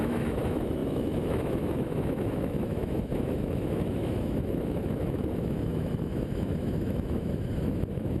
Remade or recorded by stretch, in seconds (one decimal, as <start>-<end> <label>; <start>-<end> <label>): 0.0-8.2 remade